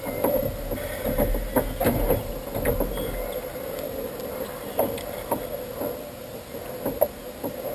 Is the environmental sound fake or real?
real